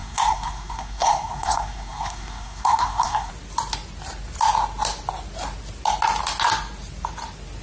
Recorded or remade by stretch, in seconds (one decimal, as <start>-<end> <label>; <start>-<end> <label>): 0.0-3.3 remade; 3.3-7.6 recorded